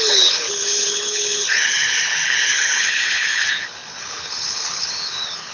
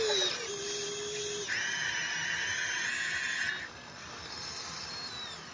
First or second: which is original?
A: second